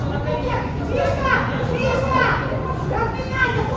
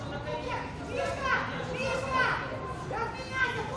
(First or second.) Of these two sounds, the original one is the second